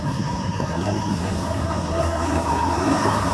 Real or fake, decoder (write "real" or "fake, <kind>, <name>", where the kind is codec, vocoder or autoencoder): fake, codec, SNAC